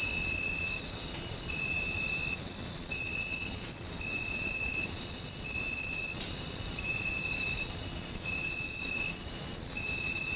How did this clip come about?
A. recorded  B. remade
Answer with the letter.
B